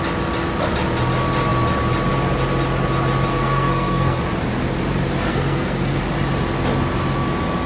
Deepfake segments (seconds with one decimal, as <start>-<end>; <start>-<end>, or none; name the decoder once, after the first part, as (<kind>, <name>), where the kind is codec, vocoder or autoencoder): 3.3-4.2 (codec, SNAC); 5.3-6.0